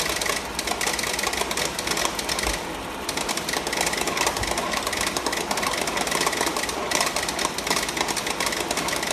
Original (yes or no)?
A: yes